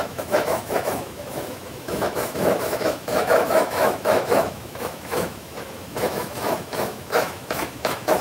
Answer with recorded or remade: remade